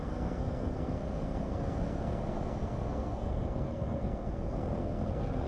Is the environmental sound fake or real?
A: fake